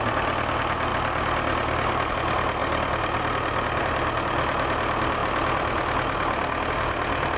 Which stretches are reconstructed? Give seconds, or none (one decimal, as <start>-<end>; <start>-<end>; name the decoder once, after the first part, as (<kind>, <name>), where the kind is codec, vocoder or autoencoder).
none